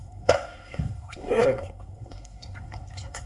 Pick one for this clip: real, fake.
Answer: fake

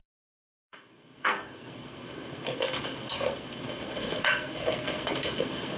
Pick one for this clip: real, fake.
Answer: fake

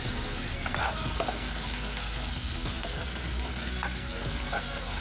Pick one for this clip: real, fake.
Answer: fake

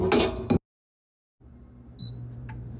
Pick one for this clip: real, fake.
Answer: real